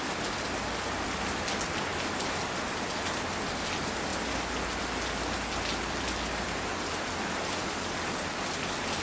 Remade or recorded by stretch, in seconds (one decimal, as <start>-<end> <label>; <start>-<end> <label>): 0.0-9.0 recorded

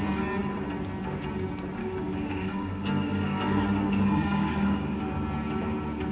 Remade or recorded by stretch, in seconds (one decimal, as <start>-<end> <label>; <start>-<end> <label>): 0.0-1.8 recorded; 1.8-5.1 remade; 5.1-6.1 recorded

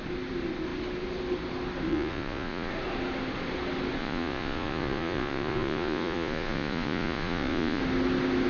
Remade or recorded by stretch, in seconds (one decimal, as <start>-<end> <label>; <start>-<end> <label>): 0.0-1.9 recorded; 1.9-2.7 remade; 2.7-4.0 recorded; 4.0-7.8 remade; 7.8-8.5 recorded

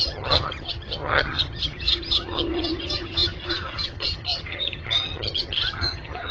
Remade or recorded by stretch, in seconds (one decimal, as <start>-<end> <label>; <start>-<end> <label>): 0.0-6.3 remade

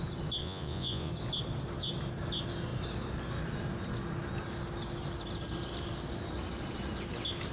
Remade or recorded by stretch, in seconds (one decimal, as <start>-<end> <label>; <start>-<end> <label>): 0.0-0.4 recorded; 0.4-1.1 remade; 1.1-7.5 recorded